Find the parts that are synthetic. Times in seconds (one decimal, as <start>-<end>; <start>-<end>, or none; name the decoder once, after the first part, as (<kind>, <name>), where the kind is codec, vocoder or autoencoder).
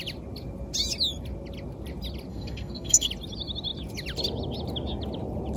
2.3-3.1 (codec, SNAC)